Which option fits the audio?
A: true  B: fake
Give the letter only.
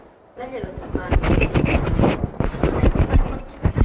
B